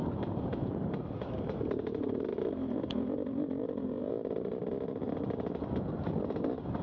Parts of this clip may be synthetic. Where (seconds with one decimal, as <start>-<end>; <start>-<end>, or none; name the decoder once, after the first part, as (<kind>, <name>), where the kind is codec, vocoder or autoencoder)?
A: 0.0-4.6 (vocoder, BigVGAN v2)